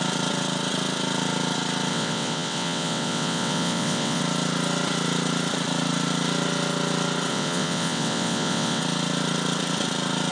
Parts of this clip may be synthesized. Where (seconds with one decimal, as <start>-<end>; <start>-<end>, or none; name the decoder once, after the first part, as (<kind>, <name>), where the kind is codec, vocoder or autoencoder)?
1.9-4.2 (vocoder, WaveNeXt); 7.3-8.8

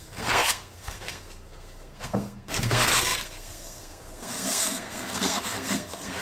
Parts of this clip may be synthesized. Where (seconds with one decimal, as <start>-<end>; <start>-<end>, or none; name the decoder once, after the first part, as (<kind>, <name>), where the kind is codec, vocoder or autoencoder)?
0.0-6.2 (codec, SNAC)

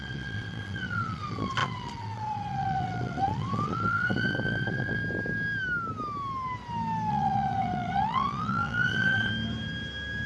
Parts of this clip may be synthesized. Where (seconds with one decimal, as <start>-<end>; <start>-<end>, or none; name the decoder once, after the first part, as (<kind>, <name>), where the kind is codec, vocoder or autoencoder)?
0.0-5.0 (vocoder, WaveNeXt); 7.1-9.3

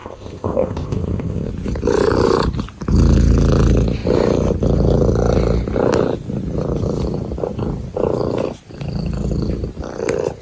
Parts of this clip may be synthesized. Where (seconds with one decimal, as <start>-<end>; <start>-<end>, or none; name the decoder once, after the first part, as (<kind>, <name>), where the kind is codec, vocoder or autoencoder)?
0.0-1.5 (codec, ZipCodec)

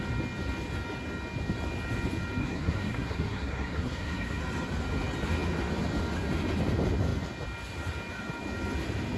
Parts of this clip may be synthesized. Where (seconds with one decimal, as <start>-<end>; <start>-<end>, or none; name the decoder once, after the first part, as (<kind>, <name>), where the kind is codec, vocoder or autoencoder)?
2.4-4.4 (codec, SNAC)

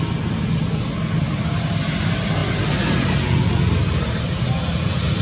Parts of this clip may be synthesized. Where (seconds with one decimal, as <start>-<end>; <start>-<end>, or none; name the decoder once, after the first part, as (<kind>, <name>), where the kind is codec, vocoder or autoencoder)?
none

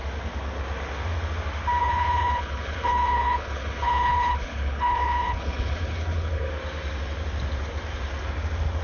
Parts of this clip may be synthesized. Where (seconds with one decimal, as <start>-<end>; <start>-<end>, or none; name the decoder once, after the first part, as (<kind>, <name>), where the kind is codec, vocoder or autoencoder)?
1.8-6.5 (codec, HILCodec)

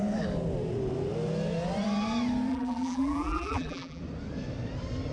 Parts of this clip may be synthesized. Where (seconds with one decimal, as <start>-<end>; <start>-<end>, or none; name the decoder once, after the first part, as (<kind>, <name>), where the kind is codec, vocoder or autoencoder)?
2.5-4.0 (vocoder, BigVGAN v2)